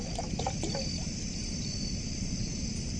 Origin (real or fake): real